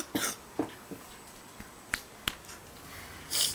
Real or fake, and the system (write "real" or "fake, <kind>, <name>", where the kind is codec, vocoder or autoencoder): real